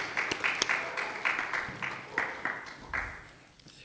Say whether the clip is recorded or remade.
recorded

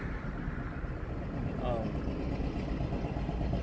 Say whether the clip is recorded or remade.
recorded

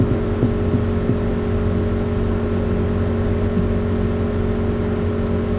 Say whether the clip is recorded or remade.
recorded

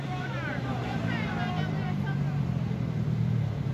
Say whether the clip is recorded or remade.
recorded